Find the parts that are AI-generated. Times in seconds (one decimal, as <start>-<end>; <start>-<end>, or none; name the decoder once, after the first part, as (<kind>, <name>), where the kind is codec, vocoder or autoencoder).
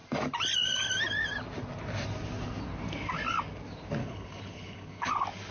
4.0-5.1 (codec, HILCodec)